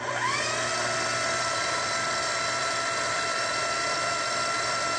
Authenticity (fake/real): fake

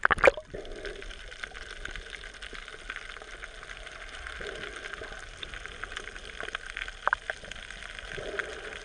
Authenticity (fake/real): real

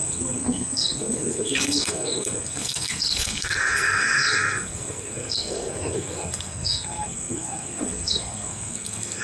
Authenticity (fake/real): fake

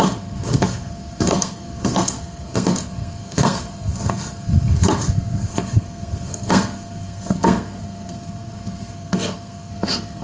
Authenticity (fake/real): fake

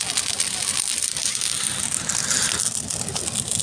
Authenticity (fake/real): real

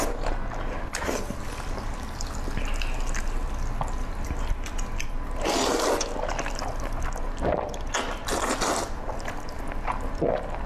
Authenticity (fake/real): real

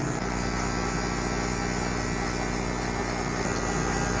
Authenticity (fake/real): real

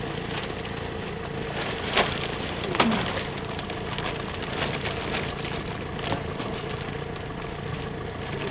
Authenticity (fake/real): real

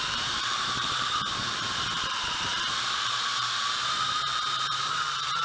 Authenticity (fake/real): fake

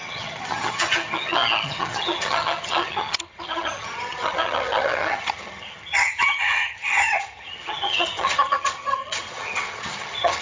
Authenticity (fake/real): fake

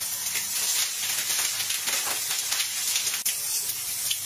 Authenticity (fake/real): real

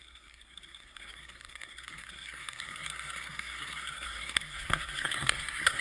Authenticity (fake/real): fake